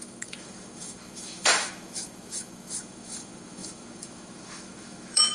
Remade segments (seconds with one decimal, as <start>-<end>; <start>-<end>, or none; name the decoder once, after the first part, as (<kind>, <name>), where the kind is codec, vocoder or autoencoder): 0.0-5.3 (autoencoder, DAC-VAE)